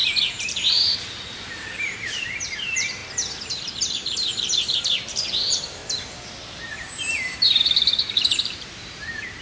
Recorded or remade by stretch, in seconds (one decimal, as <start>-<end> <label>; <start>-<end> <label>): 0.0-3.0 remade; 3.0-3.5 recorded; 3.5-5.8 remade; 5.8-6.6 recorded; 6.6-9.4 remade

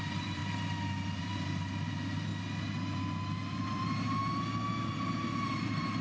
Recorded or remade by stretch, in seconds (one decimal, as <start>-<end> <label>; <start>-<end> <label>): 0.0-0.4 remade; 0.4-1.2 recorded; 1.2-2.3 remade; 2.3-3.8 recorded; 3.8-4.2 remade; 4.2-4.7 recorded; 4.7-6.0 remade

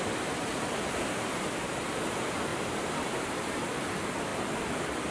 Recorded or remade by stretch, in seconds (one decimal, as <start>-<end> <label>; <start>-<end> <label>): 0.0-0.5 recorded; 0.5-1.4 remade; 1.4-2.5 recorded; 2.5-3.5 remade; 3.5-5.1 recorded